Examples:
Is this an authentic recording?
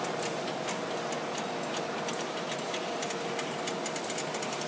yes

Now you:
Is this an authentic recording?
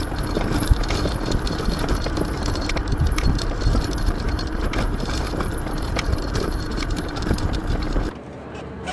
no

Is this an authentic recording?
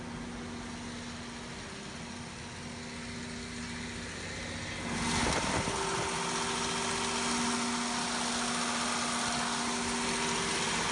yes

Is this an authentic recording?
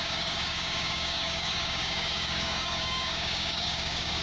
no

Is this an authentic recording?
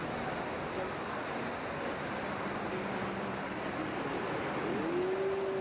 yes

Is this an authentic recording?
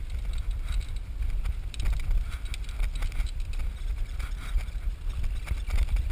yes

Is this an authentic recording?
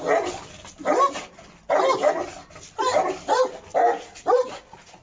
yes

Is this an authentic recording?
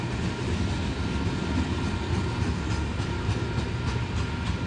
yes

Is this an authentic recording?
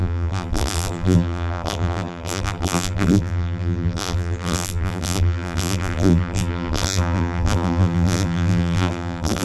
no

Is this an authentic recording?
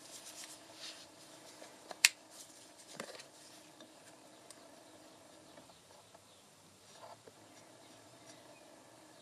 no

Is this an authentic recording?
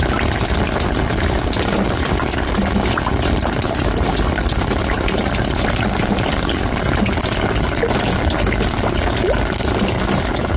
yes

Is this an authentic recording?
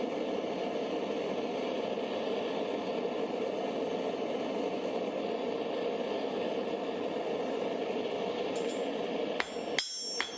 yes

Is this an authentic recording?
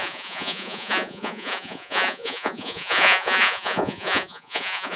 no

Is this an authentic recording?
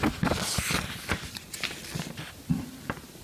yes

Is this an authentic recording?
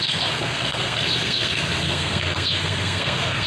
no